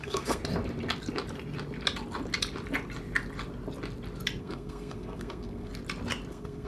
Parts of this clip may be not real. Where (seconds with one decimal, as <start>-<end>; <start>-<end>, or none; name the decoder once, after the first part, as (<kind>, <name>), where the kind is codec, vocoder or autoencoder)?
0.0-0.4 (codec, SNAC); 4.4-5.7; 6.3-6.7